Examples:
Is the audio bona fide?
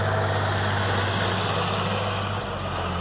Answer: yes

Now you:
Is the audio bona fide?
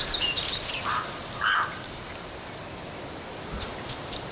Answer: no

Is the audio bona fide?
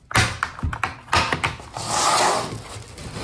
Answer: yes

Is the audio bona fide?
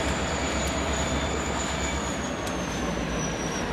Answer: no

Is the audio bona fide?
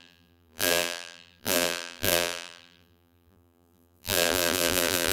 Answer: no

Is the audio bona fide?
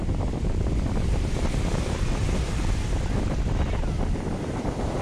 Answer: no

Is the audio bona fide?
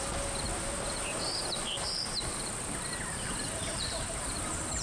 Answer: no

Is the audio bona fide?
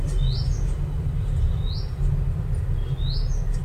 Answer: yes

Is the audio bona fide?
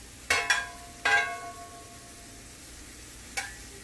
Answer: yes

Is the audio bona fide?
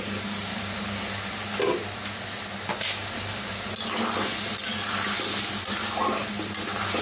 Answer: yes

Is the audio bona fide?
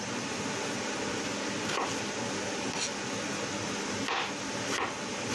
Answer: yes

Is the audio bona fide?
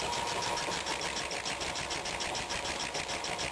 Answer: yes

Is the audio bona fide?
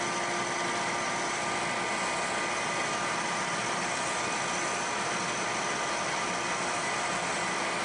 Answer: yes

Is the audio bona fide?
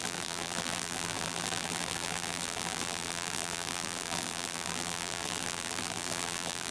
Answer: no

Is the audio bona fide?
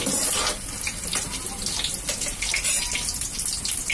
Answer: yes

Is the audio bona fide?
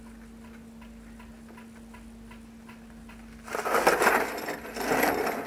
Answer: yes